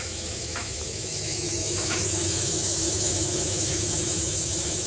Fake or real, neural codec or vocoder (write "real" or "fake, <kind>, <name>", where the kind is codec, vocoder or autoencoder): fake, autoencoder, DAC-VAE